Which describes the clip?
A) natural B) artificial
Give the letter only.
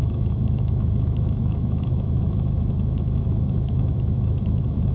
B